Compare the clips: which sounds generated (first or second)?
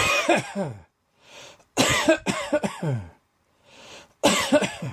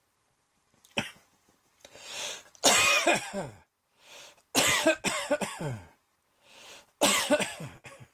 first